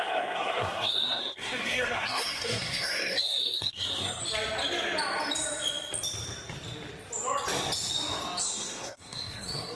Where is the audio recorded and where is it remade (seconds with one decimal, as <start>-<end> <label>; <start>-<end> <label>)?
0.0-4.2 remade; 4.2-8.4 recorded; 8.4-9.8 remade